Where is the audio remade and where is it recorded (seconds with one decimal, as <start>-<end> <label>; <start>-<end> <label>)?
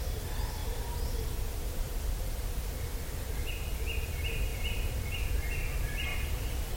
0.0-0.6 recorded; 0.6-4.0 remade; 4.0-6.8 recorded